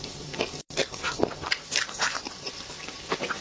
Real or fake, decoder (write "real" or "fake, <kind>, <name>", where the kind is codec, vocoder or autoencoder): fake, vocoder, BigVGAN v2